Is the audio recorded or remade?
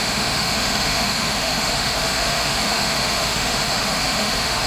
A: remade